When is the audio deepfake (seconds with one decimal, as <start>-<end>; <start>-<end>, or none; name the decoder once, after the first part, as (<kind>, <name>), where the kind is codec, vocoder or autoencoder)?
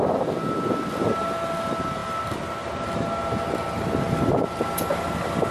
none